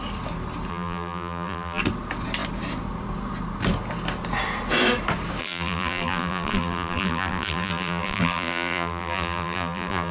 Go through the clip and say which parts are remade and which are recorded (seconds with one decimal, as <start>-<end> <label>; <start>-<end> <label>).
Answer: 0.0-0.7 recorded; 0.7-1.8 remade; 1.8-5.4 recorded; 5.4-10.1 remade